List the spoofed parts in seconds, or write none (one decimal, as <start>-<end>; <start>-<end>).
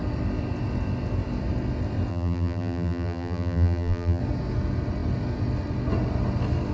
2.1-4.2